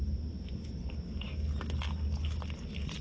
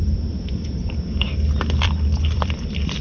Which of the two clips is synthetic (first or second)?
second